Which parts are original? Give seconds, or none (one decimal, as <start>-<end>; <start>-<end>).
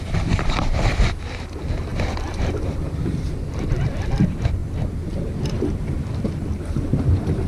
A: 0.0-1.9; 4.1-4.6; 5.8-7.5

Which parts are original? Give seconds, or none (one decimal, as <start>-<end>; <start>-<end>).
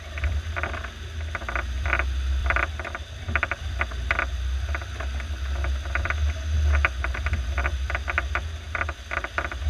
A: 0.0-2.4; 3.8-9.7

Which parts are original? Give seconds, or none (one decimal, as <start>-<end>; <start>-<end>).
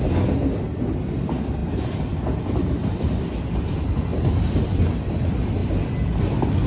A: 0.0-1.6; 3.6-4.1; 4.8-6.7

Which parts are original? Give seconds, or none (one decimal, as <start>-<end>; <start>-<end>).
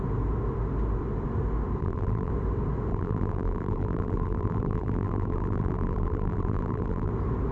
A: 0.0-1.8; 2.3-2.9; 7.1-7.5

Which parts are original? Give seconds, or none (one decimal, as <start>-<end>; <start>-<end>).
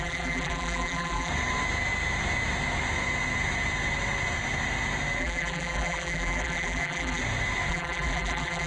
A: 1.3-5.2; 7.2-7.7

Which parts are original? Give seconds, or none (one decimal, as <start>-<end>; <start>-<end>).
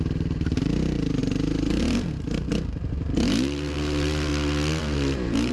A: 4.3-4.8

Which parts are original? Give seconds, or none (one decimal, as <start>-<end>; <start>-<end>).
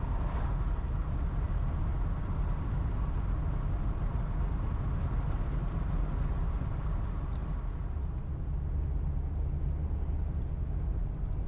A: 0.0-11.5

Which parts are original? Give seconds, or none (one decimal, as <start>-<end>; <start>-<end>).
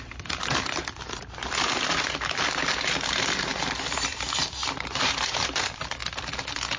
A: 3.5-4.1; 6.0-6.8